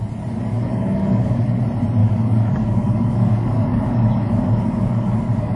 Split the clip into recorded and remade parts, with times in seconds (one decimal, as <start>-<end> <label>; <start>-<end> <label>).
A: 0.0-0.5 recorded; 0.5-1.6 remade; 1.6-2.0 recorded; 2.0-5.6 remade